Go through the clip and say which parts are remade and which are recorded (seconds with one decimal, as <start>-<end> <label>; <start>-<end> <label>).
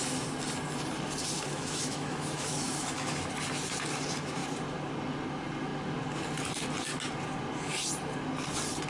0.0-1.5 recorded; 1.5-3.3 remade; 3.3-8.9 recorded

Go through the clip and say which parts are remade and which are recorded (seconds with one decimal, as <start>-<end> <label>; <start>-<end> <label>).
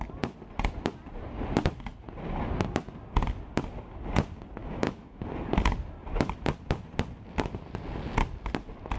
0.0-4.6 recorded; 4.6-5.2 remade; 5.2-9.0 recorded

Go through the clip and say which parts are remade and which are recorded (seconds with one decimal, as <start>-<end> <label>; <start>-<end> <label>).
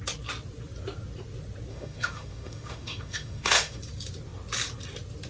0.0-1.7 recorded; 1.7-3.8 remade; 3.8-5.3 recorded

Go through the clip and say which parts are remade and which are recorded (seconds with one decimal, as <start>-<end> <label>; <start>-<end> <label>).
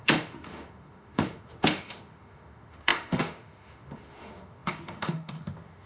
0.0-5.9 remade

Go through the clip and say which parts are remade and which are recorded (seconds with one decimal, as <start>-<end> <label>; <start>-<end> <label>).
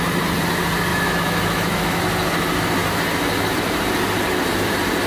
0.0-0.9 recorded; 0.9-2.0 remade; 2.0-5.1 recorded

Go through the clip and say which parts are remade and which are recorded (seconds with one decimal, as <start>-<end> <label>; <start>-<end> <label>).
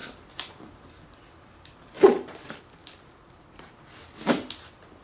0.0-5.0 recorded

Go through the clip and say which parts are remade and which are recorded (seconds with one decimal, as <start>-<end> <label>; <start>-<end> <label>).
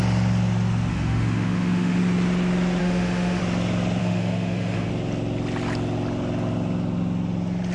0.0-0.9 recorded; 0.9-2.0 remade; 2.0-2.8 recorded; 2.8-3.4 remade; 3.4-4.0 recorded; 4.0-4.9 remade; 4.9-7.7 recorded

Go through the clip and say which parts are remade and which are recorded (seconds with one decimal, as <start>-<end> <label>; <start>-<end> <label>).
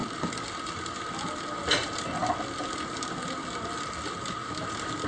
0.0-5.1 recorded